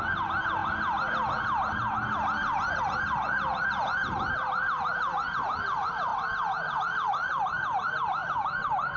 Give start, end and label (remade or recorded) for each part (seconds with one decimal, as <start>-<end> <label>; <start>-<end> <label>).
0.0-0.6 remade; 0.6-2.8 recorded; 2.8-6.1 remade; 6.1-6.8 recorded; 6.8-9.0 remade